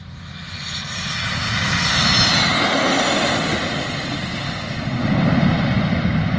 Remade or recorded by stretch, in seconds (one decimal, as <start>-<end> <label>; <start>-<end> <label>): 0.0-6.4 recorded